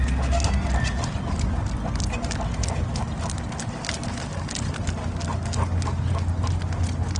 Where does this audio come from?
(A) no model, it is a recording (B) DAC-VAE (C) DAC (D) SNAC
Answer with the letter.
A